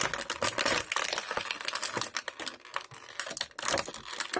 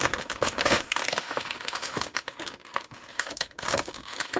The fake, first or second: second